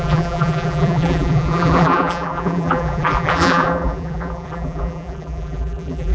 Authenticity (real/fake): fake